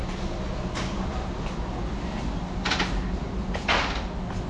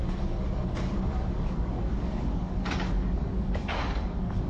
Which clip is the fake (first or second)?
second